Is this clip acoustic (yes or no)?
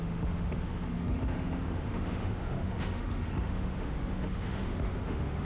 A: no